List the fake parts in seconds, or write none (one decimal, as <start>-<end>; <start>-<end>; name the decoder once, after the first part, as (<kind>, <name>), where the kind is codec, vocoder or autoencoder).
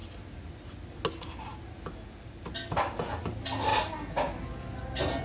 none